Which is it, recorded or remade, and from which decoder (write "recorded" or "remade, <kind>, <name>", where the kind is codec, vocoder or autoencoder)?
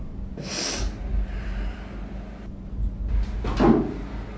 recorded